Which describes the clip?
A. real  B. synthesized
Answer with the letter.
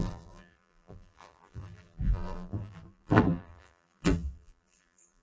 B